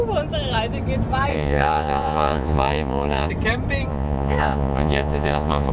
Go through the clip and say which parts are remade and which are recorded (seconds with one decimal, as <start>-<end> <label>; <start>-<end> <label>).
0.0-1.3 recorded; 1.3-3.3 remade; 3.3-3.9 recorded; 3.9-5.7 remade

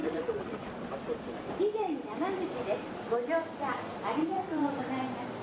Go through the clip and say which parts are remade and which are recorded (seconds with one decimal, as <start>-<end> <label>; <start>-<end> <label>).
0.0-0.7 remade; 0.7-4.2 recorded; 4.2-4.8 remade; 4.8-5.4 recorded

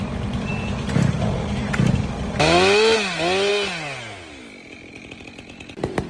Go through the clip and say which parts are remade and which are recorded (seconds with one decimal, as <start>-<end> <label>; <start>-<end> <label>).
0.0-6.1 recorded

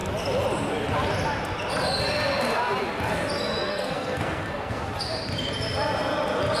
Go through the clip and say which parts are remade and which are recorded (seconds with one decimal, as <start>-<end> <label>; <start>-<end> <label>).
0.0-3.7 recorded; 3.7-4.8 remade; 4.8-6.6 recorded

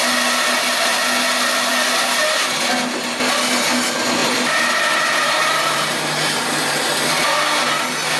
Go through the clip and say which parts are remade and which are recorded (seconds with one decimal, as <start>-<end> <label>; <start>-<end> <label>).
0.0-4.2 recorded; 4.2-6.9 remade; 6.9-8.2 recorded